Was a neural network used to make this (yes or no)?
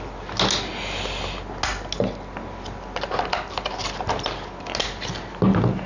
no